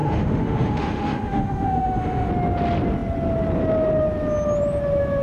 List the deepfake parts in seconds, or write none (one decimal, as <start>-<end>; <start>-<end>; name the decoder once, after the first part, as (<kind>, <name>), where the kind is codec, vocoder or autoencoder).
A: 0.0-2.3 (autoencoder, DAC-VAE)

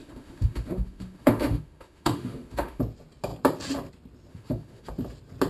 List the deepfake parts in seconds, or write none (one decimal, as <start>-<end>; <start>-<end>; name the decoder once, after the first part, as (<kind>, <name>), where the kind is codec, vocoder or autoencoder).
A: 0.0-2.8 (autoencoder, DAC-VAE); 4.3-4.9

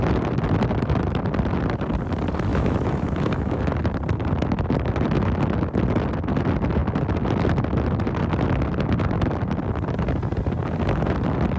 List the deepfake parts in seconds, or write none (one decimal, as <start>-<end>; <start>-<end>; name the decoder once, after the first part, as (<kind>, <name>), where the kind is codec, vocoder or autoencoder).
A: 2.5-3.6 (autoencoder, DAC-VAE)